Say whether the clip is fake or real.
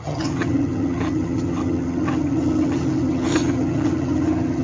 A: fake